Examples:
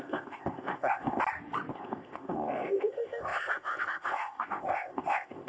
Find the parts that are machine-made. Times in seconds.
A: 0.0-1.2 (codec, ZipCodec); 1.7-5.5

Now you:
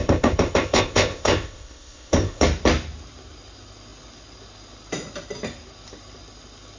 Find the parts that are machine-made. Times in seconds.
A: 0.0-2.4 (codec, ZipCodec)

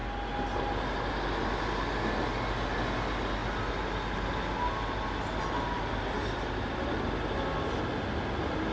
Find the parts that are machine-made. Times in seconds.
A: none

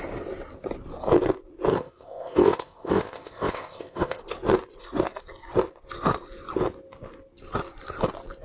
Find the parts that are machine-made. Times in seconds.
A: 1.7-4.2 (codec, ZipCodec)

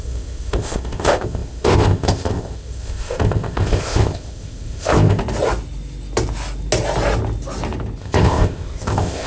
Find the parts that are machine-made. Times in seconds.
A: 0.0-5.2 (codec, ZipCodec); 8.0-9.3

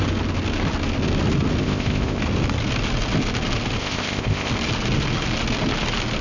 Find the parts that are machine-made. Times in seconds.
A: 1.6-2.2 (codec, ZipCodec); 3.8-4.5